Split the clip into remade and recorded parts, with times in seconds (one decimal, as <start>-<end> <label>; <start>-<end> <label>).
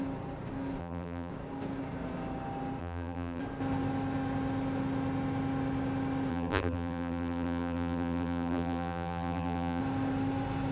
0.0-0.8 recorded; 0.8-1.3 remade; 1.3-2.8 recorded; 2.8-3.4 remade; 3.4-6.3 recorded; 6.3-9.8 remade; 9.8-10.7 recorded